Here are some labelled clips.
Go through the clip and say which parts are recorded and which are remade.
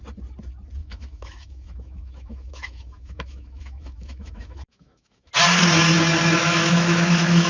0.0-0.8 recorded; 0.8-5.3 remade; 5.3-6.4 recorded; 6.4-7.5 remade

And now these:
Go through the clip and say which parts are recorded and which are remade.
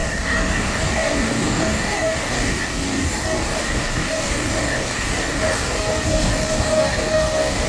0.0-7.7 remade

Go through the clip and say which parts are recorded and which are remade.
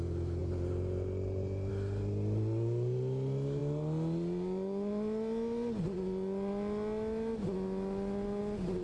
0.0-0.4 recorded; 0.4-1.7 remade; 1.7-8.8 recorded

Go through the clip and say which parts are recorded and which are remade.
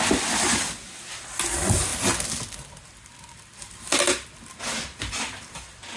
0.0-6.0 recorded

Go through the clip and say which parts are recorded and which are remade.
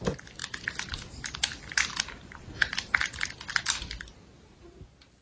0.0-5.2 recorded